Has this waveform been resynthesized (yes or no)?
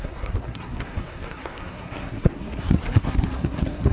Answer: yes